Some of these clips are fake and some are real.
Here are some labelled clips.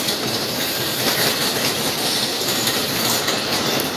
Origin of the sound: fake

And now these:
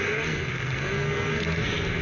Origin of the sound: fake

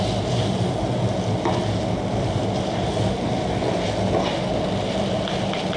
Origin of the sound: real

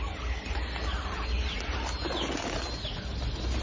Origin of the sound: real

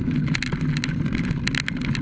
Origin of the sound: real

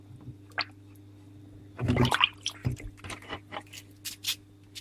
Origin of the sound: real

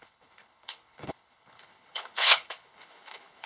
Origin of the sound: fake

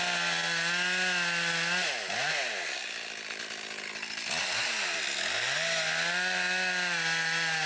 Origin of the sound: real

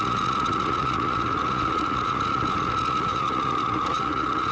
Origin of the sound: fake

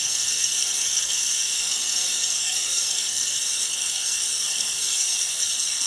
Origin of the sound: fake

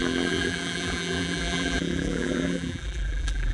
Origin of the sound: fake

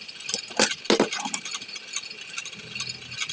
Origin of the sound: real